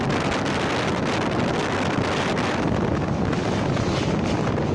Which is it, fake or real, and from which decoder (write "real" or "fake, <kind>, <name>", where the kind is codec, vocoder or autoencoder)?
real